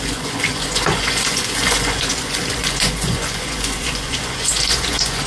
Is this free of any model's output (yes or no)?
no